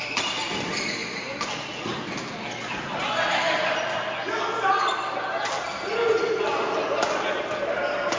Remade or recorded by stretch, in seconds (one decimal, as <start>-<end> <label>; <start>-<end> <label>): 0.0-8.2 recorded